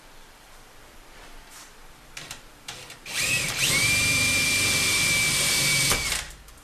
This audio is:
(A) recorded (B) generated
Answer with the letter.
B